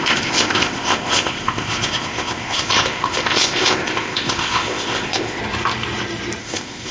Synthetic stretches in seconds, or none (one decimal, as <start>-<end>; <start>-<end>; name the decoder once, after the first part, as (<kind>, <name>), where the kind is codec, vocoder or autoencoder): 0.0-5.4 (codec, ZipCodec); 6.4-6.9